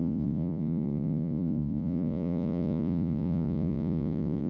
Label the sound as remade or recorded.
remade